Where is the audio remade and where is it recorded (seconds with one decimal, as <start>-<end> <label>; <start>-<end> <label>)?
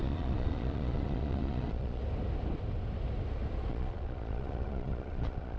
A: 0.0-2.0 remade; 2.0-3.7 recorded; 3.7-5.6 remade